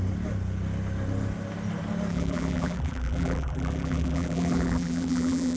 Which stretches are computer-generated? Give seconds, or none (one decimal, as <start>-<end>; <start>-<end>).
2.1-5.6